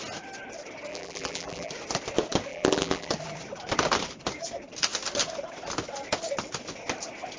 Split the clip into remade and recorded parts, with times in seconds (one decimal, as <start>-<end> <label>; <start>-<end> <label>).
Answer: 0.0-0.9 recorded; 0.9-1.7 remade; 1.7-2.5 recorded; 2.5-3.1 remade; 3.1-7.4 recorded